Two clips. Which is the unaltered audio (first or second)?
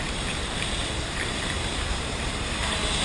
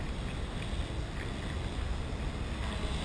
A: second